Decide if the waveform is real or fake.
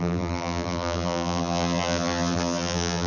fake